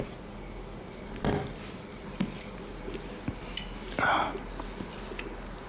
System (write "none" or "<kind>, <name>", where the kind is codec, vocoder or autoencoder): none